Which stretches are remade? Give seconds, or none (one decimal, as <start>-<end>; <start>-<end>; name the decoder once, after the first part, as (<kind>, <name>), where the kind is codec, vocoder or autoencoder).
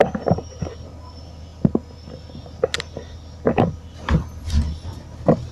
none